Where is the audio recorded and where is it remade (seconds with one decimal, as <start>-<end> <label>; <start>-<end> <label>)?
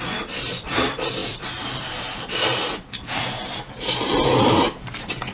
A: 0.0-5.3 remade